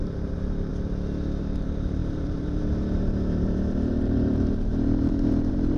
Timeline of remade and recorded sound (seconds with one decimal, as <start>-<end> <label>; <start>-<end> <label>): 0.0-0.7 remade; 0.7-1.4 recorded; 1.4-5.8 remade